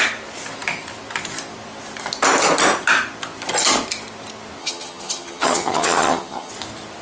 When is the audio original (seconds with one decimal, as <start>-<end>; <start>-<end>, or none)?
0.0-4.6; 6.5-7.0